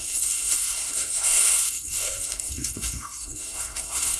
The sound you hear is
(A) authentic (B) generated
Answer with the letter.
B